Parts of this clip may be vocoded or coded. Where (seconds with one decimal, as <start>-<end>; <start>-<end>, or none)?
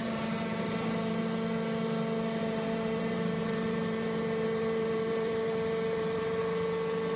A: 0.0-1.2; 2.4-6.4